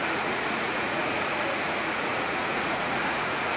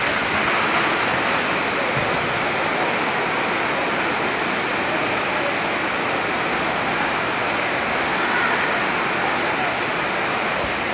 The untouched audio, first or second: second